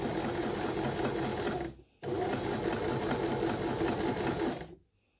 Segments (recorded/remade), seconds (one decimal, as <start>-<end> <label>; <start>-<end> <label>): 0.0-5.2 recorded